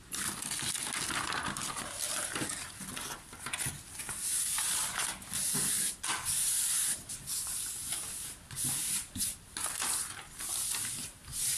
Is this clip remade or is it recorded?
recorded